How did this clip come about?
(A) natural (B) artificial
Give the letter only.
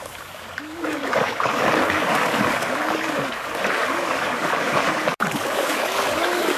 B